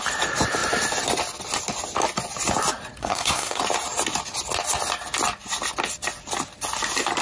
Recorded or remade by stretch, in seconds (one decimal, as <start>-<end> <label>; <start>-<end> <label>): 0.0-3.0 recorded; 3.0-3.6 remade; 3.6-7.2 recorded